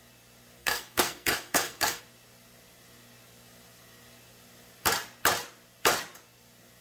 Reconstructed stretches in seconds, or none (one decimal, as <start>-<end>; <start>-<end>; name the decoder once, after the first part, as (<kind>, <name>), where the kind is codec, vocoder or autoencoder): 0.6-2.0 (codec, SNAC)